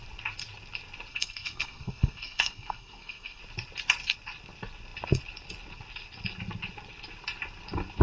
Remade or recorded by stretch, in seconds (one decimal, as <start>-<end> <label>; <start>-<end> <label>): 0.0-1.1 recorded; 1.1-3.4 remade; 3.4-8.0 recorded